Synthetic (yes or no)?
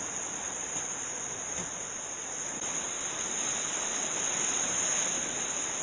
no